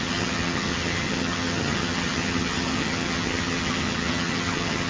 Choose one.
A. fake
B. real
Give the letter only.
A